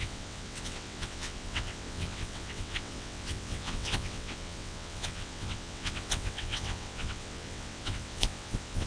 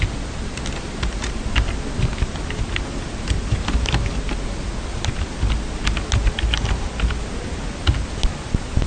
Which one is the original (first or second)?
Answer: second